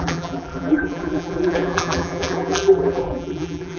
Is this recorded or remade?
remade